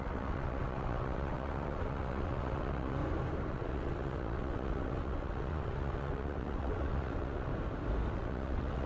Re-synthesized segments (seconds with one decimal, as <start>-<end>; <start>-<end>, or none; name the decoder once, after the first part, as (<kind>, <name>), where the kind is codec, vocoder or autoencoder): 0.0-3.0 (vocoder, WaveNeXt); 3.5-7.5; 8.1-8.9